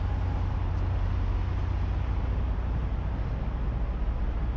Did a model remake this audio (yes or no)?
no